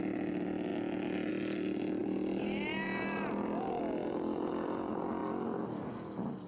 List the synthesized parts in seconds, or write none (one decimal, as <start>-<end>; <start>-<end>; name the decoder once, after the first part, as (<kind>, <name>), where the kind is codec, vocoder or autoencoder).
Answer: 2.0-3.8 (vocoder, BigVGAN v2)